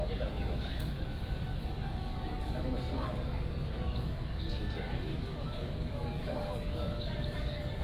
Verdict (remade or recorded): remade